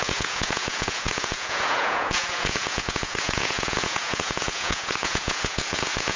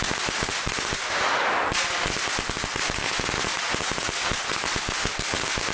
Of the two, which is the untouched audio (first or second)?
second